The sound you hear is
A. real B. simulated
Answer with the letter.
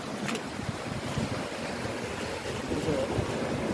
A